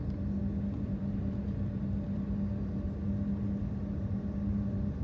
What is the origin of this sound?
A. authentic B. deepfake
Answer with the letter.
A